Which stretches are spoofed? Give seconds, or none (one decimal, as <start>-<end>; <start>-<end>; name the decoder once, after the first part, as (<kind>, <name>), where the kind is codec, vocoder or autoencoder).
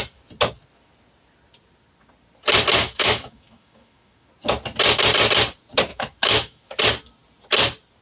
2.8-4.3 (autoencoder, DAC-VAE); 5.9-6.8